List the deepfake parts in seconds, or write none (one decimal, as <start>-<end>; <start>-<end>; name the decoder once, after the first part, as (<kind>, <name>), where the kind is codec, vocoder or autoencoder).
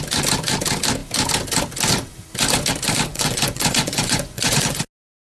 3.1-4.8 (vocoder, Vocos)